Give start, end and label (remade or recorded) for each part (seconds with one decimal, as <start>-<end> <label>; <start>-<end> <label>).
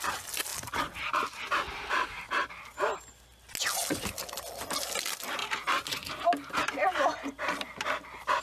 0.0-0.5 recorded; 0.5-3.1 remade; 3.1-5.4 recorded; 5.4-8.4 remade